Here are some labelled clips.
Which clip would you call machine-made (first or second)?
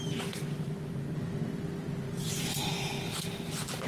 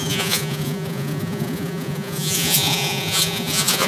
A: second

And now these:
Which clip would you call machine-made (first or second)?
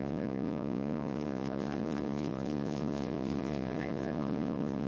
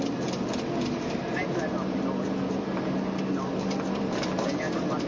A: first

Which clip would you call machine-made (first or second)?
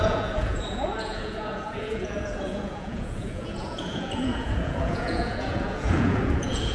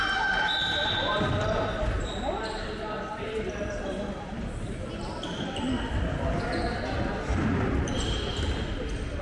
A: first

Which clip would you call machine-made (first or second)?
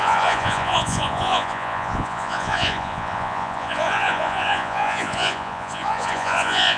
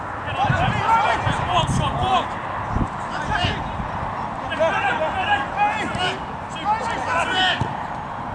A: first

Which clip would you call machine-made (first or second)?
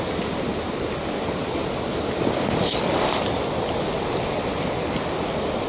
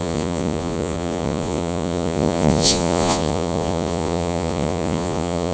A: second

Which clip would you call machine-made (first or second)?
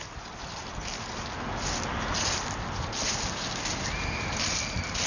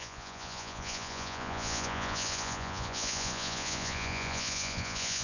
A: second